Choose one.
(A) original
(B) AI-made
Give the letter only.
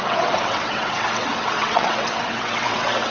B